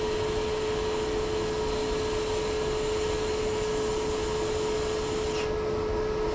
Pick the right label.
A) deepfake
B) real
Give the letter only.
B